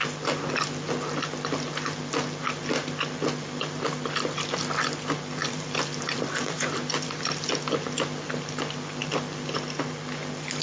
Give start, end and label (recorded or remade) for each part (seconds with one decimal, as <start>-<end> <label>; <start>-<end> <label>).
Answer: 0.0-5.4 recorded; 5.4-7.5 remade; 7.5-10.6 recorded